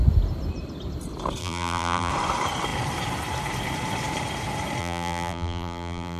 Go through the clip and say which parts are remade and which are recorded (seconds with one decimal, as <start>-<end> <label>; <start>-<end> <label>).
0.0-1.4 recorded; 1.4-2.1 remade; 2.1-4.8 recorded; 4.8-6.2 remade